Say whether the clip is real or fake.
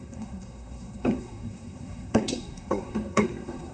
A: fake